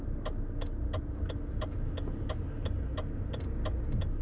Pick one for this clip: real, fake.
real